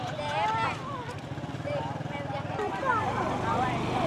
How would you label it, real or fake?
real